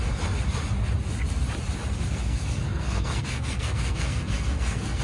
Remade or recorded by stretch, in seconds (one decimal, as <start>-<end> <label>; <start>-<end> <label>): 0.0-1.9 recorded; 1.9-5.0 remade